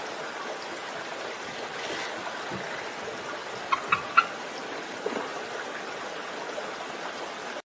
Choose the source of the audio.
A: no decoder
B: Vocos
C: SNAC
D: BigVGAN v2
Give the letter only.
A